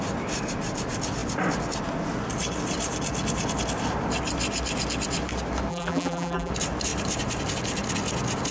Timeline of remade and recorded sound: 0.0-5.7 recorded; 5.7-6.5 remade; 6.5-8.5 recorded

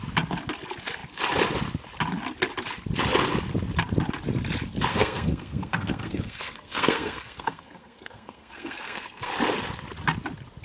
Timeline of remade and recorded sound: 0.0-4.9 recorded; 4.9-9.3 remade; 9.3-10.6 recorded